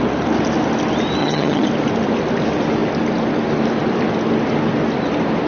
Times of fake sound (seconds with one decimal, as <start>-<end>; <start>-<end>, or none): 1.2-1.7